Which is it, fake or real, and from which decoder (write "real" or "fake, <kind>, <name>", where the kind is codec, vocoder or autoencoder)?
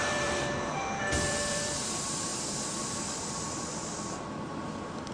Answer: fake, vocoder, BigVGAN v2